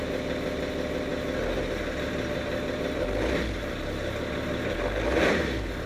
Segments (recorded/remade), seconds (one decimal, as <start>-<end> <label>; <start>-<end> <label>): 0.0-5.9 recorded